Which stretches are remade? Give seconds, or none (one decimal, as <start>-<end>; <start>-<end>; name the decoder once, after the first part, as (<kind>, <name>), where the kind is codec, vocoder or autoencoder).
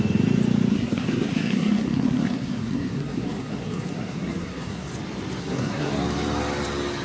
0.7-4.9 (codec, SNAC); 5.4-5.9